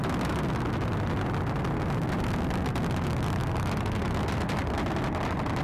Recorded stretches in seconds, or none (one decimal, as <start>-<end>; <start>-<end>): 0.0-5.6